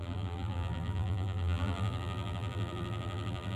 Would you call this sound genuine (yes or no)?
no